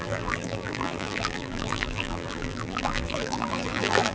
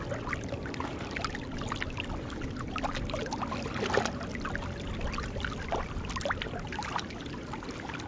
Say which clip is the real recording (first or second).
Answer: second